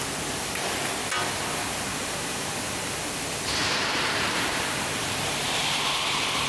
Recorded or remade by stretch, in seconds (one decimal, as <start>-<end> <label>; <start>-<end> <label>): 0.0-0.5 remade; 0.5-1.9 recorded; 1.9-2.6 remade; 2.6-3.6 recorded; 3.6-5.8 remade; 5.8-6.5 recorded